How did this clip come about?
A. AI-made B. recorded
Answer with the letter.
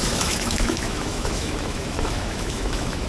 A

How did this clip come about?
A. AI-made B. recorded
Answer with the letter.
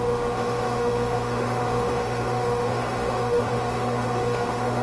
A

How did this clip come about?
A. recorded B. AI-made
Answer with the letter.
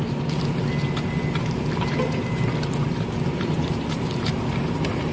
A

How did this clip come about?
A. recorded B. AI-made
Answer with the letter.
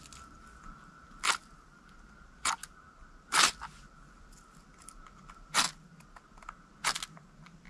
A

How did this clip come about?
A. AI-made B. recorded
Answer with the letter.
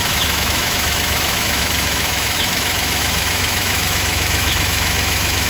A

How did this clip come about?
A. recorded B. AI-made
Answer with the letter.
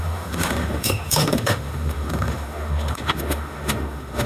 B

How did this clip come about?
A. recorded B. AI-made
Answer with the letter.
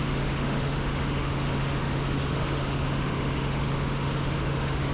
B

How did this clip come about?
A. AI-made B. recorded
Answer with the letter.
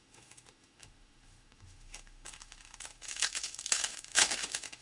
A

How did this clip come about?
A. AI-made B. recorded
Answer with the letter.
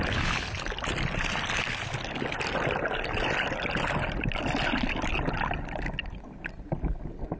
B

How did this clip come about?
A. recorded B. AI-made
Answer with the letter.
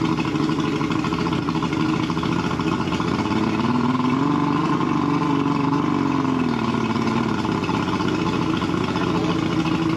A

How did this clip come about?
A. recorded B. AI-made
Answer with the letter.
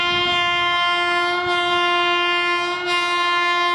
A